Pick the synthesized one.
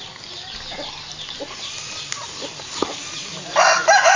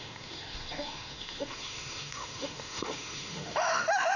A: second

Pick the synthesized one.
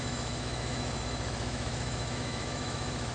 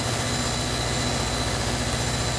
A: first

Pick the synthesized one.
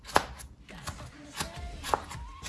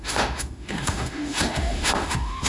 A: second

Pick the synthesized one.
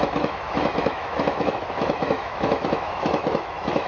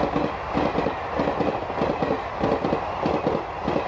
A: first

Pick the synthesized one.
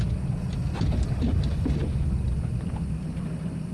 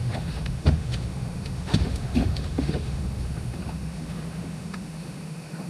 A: second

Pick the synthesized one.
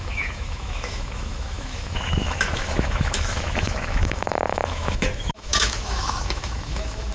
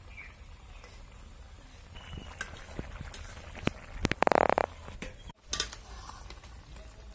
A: first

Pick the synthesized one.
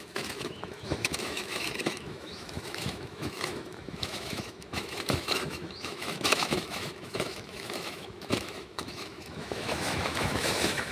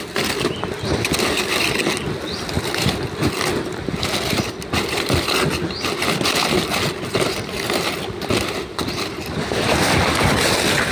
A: first